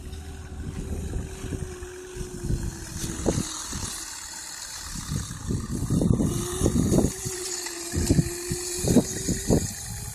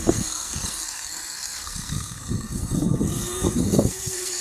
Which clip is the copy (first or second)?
second